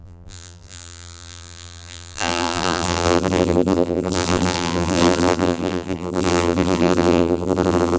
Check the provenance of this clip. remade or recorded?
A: remade